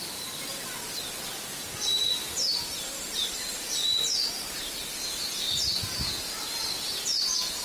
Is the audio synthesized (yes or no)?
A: no